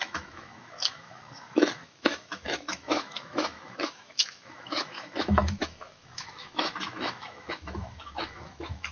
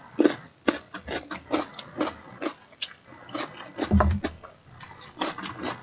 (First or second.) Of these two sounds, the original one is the second